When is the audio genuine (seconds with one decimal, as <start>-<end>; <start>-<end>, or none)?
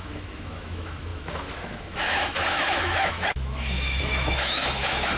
none